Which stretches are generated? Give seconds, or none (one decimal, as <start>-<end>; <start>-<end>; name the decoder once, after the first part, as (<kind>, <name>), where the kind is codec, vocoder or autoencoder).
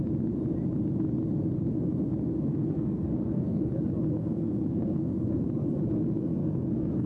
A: 2.5-3.7 (codec, SNAC); 4.2-5.4; 6.4-7.1